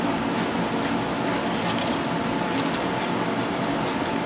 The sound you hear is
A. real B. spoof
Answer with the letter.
A